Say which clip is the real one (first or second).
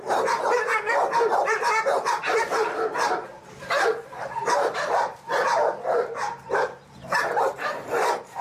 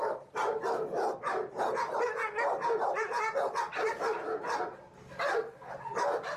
second